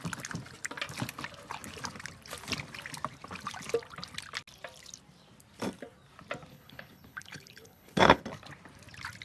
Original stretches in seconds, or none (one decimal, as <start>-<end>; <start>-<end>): 0.0-6.5; 8.2-9.2

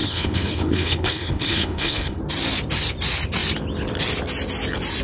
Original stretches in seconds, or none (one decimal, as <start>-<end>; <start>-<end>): 2.2-5.0